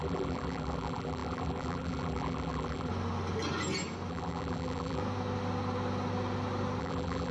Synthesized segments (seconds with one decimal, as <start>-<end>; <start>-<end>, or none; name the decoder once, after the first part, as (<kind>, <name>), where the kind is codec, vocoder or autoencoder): 0.0-2.9 (vocoder, BigVGAN v2); 4.1-5.0; 6.8-7.3